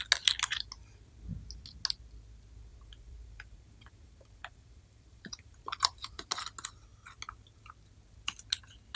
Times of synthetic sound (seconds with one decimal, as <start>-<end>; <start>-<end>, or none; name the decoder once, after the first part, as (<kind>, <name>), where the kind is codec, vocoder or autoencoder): 2.7-6.3 (vocoder, BigVGAN v2)